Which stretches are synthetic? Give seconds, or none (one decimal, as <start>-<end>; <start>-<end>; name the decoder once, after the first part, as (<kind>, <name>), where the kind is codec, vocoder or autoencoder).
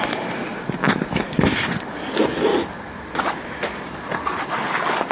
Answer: 0.5-1.3 (vocoder, BigVGAN v2)